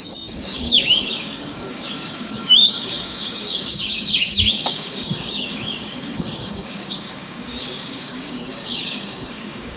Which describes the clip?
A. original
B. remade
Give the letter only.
B